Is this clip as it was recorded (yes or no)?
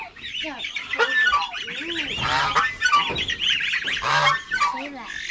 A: yes